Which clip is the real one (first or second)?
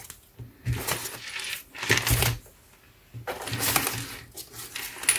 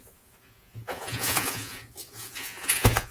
first